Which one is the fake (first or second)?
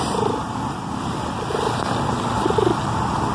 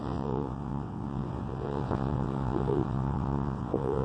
second